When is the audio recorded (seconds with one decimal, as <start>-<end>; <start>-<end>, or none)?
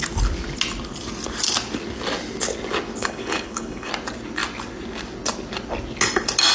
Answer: 0.0-3.0; 3.9-6.5